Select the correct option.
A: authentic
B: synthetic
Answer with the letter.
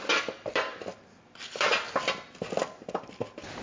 A